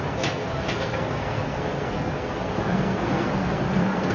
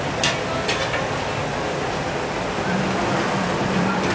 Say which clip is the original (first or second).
second